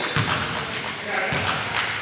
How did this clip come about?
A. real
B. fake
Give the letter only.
A